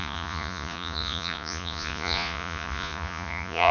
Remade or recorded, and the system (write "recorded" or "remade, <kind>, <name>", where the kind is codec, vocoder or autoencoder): remade, vocoder, Vocos